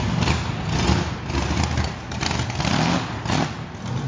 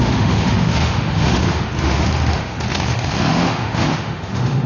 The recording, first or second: first